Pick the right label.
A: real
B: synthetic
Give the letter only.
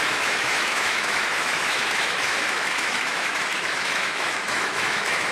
B